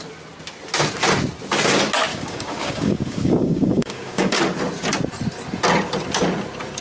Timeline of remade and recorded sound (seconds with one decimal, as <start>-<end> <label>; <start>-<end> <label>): 0.0-2.1 recorded; 2.1-4.4 remade; 4.4-6.8 recorded

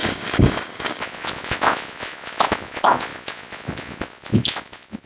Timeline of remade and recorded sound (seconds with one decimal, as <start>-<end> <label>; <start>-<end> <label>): 0.0-1.0 remade; 1.0-5.1 recorded

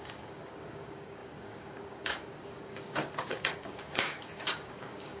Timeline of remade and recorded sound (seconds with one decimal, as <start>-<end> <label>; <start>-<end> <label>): 0.0-5.2 remade

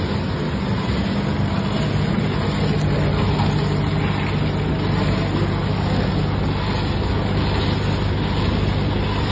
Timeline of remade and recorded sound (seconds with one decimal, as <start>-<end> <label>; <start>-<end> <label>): 0.0-9.3 recorded